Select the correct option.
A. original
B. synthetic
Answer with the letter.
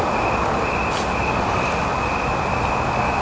A